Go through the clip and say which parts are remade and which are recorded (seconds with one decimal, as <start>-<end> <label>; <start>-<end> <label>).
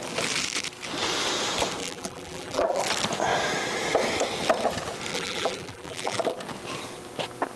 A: 0.0-1.8 recorded; 1.8-2.8 remade; 2.8-5.1 recorded; 5.1-6.2 remade; 6.2-7.6 recorded